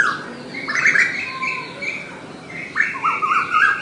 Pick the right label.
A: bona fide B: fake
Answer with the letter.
A